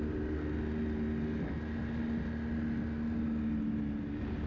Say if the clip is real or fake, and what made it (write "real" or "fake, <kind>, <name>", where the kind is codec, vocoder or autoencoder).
real